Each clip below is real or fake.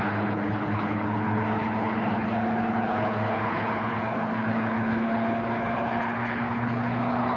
fake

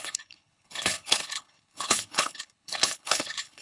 fake